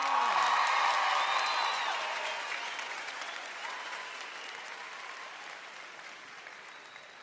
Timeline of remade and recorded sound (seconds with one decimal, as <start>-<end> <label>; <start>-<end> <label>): 0.0-1.7 recorded; 1.7-4.3 remade; 4.3-7.2 recorded